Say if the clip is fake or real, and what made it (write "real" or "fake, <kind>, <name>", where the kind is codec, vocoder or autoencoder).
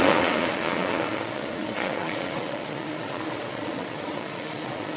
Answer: fake, vocoder, Vocos